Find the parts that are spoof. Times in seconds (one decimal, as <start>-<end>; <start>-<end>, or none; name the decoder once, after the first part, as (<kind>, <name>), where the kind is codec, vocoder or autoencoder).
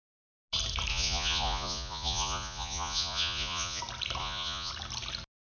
0.9-3.8 (vocoder, Vocos); 4.2-4.7